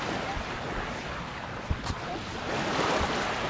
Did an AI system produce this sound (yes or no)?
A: yes